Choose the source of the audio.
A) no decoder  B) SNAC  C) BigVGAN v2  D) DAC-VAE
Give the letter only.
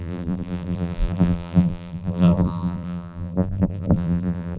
C